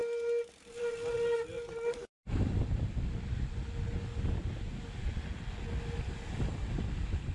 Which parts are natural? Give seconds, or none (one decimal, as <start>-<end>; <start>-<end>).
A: 0.0-7.3